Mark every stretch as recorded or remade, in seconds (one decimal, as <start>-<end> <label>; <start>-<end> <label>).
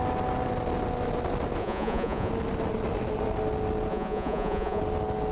0.0-1.6 recorded; 1.6-2.3 remade; 2.3-3.9 recorded; 3.9-4.8 remade; 4.8-5.3 recorded